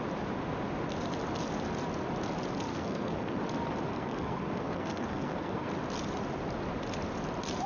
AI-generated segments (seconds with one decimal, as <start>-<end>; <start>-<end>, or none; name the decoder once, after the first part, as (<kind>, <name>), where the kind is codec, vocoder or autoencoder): 2.7-3.4 (codec, SNAC); 3.9-5.7